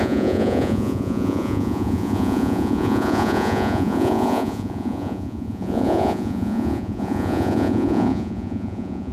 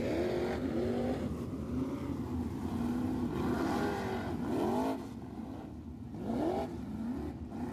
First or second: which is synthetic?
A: first